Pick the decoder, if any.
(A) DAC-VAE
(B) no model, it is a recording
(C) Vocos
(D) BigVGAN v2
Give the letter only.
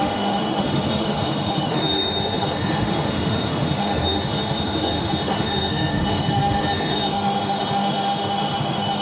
A